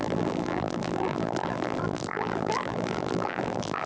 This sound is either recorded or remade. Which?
remade